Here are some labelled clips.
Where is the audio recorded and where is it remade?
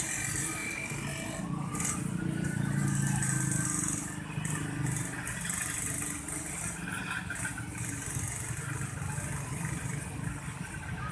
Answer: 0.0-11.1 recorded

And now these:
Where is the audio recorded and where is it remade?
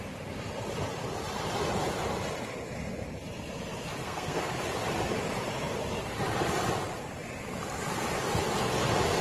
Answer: 0.0-4.0 recorded; 4.0-4.5 remade; 4.5-9.2 recorded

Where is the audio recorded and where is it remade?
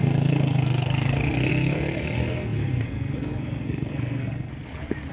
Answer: 0.0-4.5 remade; 4.5-5.1 recorded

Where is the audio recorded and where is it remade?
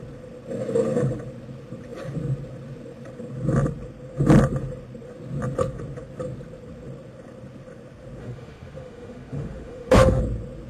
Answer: 0.0-8.2 recorded; 8.2-10.2 remade; 10.2-10.7 recorded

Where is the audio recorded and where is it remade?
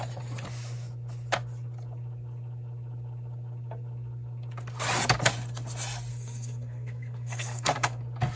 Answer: 0.0-6.1 recorded; 6.1-8.0 remade; 8.0-8.4 recorded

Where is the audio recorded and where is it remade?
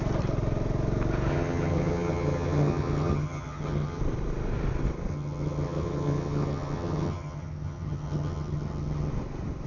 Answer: 0.0-1.3 recorded; 1.3-4.0 remade; 4.0-5.1 recorded; 5.1-9.1 remade; 9.1-9.7 recorded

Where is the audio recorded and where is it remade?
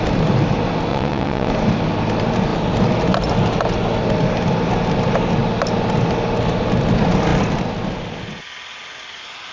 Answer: 0.0-0.9 recorded; 0.9-1.5 remade; 1.5-9.5 recorded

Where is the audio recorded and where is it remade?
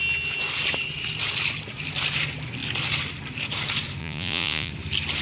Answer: 0.0-4.0 recorded; 4.0-4.7 remade; 4.7-5.2 recorded